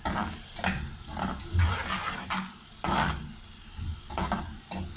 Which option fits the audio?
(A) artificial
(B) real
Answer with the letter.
B